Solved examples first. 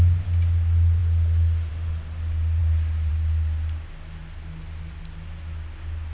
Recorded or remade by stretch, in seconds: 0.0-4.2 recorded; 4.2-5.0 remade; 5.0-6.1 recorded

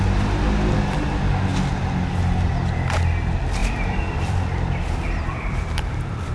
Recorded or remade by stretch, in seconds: 0.0-3.6 recorded; 3.6-6.3 remade